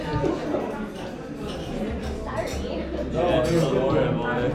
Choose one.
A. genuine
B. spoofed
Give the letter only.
A